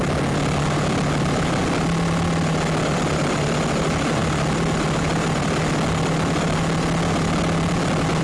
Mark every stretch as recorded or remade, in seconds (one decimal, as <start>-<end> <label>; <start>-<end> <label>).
0.0-8.2 recorded